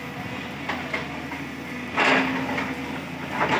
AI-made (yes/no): no